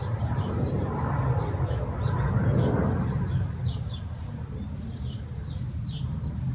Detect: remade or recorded recorded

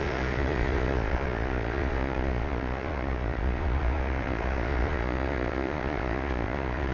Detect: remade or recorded remade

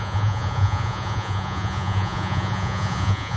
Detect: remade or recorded remade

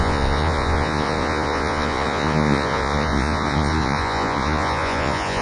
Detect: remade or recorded remade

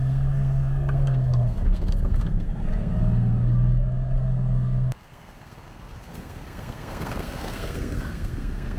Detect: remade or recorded remade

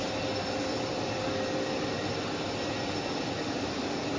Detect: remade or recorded recorded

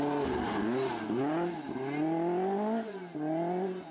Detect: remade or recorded recorded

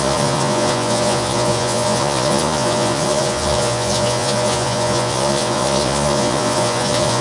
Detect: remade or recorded remade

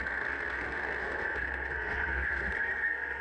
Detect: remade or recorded remade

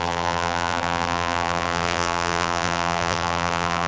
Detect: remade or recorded remade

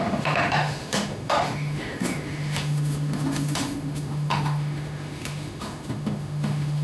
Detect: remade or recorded remade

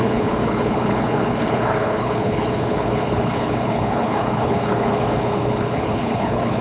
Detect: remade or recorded remade